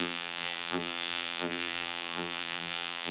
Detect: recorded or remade remade